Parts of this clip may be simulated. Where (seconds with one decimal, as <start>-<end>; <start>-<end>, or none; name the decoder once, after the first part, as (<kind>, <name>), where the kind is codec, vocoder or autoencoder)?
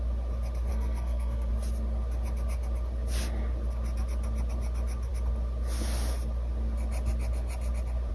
0.7-1.5 (codec, SNAC)